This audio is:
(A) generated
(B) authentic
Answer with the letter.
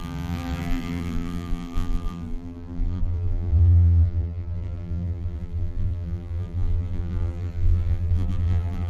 A